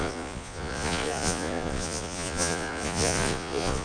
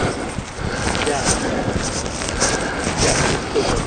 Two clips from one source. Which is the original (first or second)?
second